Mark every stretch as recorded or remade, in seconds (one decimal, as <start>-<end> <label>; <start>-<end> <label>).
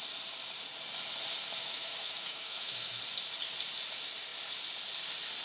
0.0-1.6 recorded; 1.6-3.0 remade; 3.0-5.4 recorded